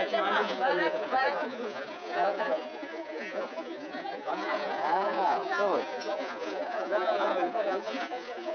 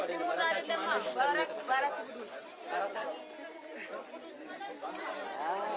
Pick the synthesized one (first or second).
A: first